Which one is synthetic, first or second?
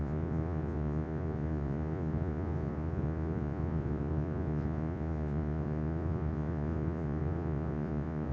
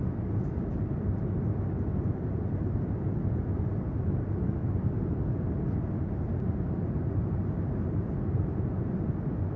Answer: first